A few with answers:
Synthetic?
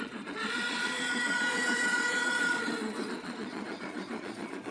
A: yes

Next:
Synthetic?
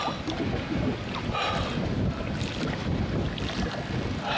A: no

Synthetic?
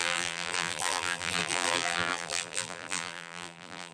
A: yes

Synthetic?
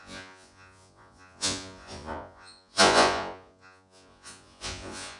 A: yes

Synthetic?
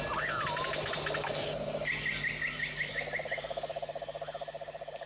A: no